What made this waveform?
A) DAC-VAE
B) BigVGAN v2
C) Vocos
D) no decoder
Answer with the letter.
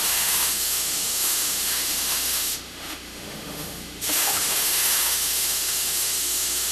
A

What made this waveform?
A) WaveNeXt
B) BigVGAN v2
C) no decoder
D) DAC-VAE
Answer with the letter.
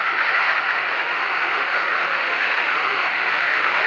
D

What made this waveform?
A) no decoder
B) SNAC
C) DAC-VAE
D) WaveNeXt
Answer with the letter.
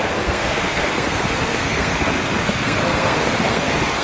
B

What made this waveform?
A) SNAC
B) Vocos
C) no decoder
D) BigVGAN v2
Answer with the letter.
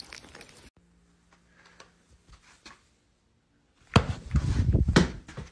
C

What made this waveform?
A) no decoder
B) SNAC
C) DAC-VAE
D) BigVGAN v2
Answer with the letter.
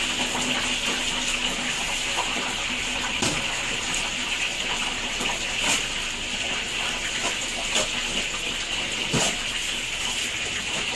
A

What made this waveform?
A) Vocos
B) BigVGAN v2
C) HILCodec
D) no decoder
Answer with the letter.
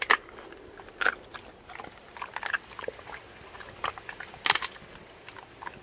D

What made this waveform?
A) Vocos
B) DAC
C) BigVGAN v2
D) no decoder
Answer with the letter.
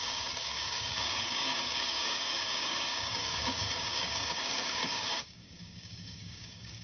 B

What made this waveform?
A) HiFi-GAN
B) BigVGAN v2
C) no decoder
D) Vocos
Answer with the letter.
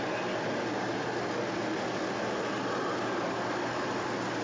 C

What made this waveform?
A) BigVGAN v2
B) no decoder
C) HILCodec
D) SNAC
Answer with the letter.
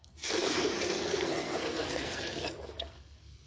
D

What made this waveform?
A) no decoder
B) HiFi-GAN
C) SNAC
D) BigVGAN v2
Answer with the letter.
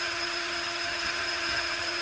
B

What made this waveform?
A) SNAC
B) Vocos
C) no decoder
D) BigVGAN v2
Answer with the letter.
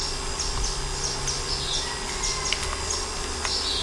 C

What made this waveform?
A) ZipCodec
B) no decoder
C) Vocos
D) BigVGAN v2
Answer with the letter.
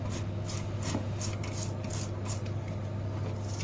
B